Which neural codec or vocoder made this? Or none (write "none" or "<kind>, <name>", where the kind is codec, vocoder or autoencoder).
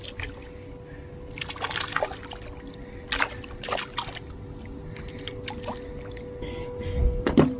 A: none